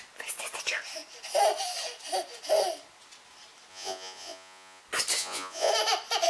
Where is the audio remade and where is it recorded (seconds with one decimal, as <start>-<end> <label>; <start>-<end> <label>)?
0.0-3.7 recorded; 3.7-4.8 remade; 4.8-5.2 recorded; 5.2-5.7 remade; 5.7-6.3 recorded